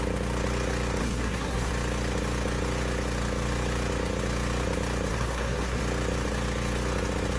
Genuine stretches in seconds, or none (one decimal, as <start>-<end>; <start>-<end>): 0.0-1.0; 1.7-5.1; 5.8-7.4